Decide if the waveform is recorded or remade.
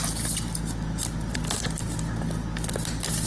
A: recorded